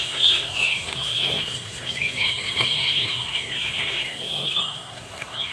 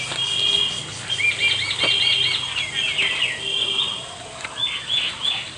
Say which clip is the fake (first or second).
first